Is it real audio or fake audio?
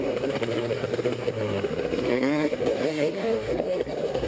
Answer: fake